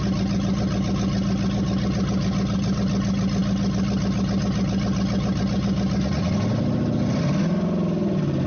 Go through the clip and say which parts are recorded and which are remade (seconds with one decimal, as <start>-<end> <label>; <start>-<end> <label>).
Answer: 0.0-8.5 recorded